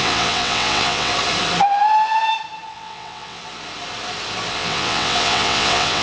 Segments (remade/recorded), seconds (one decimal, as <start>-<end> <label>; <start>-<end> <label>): 0.0-1.1 remade; 1.1-2.7 recorded; 2.7-3.4 remade; 3.4-4.5 recorded; 4.5-6.0 remade